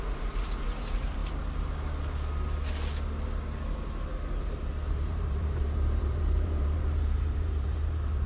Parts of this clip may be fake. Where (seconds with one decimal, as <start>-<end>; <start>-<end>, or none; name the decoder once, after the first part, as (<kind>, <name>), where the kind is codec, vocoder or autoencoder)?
0.0-1.2 (vocoder, BigVGAN v2); 4.9-8.3